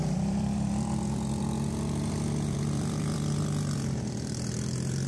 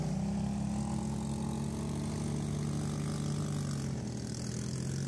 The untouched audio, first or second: second